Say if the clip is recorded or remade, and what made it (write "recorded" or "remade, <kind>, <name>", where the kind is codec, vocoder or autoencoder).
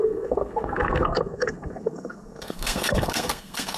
remade, codec, SNAC